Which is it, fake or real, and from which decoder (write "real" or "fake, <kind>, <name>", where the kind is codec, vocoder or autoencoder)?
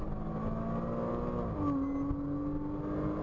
real